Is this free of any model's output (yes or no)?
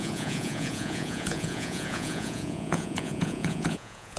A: no